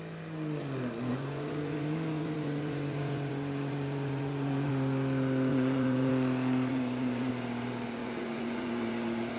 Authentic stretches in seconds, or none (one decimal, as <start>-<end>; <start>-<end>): 0.0-1.1; 4.7-5.5; 6.1-6.7; 7.3-8.0; 8.9-9.4